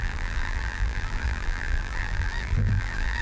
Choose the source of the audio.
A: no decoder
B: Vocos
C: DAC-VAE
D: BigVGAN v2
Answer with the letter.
D